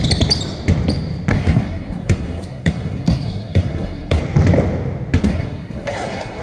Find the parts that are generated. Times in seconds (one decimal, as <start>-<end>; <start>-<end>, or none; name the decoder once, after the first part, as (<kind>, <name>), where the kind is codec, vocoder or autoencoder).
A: 1.3-4.2 (codec, SNAC); 5.2-6.4